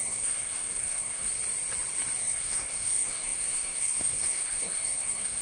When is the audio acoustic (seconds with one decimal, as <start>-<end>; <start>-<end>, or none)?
1.3-2.2